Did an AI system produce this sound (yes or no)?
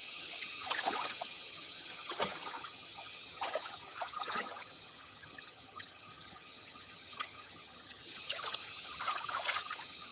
yes